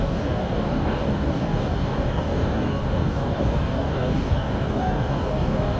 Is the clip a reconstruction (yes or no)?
yes